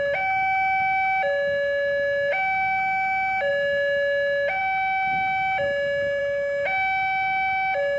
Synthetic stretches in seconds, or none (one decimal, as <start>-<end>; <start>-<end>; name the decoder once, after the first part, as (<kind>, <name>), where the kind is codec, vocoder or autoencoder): none